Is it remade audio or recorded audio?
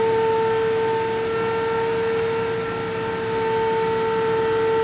recorded